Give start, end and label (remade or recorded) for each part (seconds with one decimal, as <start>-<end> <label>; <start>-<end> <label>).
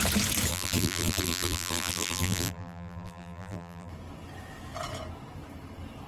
0.0-0.5 recorded; 0.5-3.9 remade; 3.9-6.1 recorded